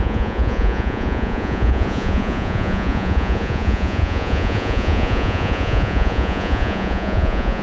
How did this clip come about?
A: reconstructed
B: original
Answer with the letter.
A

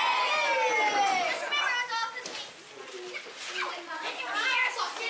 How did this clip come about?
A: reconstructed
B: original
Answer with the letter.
B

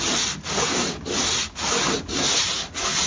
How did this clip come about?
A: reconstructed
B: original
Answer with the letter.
B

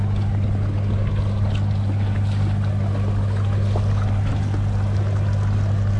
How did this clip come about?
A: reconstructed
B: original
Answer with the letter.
B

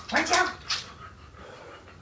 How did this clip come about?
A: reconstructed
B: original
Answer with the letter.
B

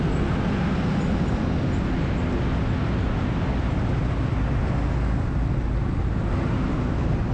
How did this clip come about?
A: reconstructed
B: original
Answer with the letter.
B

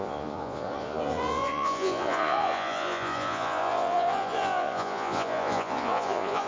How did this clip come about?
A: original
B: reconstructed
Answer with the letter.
B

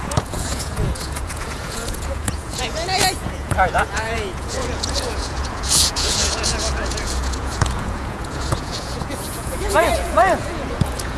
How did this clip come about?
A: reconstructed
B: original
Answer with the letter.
A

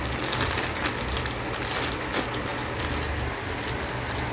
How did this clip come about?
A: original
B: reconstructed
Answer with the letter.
A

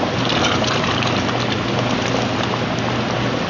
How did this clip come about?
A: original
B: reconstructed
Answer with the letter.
A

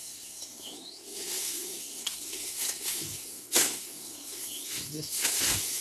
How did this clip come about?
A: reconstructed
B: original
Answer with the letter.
A